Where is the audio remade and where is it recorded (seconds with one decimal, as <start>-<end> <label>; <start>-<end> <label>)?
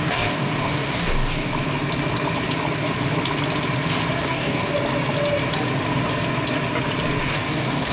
0.0-1.5 remade; 1.5-4.2 recorded; 4.2-4.7 remade; 4.7-7.2 recorded; 7.2-7.9 remade